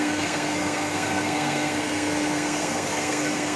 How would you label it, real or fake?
fake